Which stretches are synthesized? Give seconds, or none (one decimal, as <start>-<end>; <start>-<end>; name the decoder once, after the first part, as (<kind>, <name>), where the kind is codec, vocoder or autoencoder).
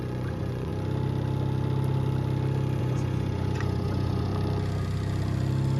0.0-0.7 (vocoder, Vocos); 2.8-4.3